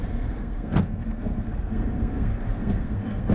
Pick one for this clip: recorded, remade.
remade